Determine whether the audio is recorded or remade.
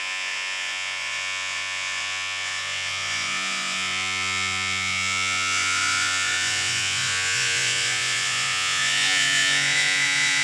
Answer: remade